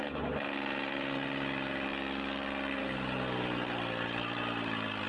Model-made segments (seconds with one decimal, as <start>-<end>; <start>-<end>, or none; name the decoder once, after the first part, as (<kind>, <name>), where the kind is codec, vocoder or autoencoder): none